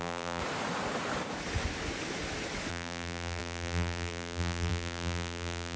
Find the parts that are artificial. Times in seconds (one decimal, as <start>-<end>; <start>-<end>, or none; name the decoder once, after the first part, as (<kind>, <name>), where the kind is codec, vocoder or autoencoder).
0.0-0.4 (vocoder, BigVGAN v2); 2.7-5.8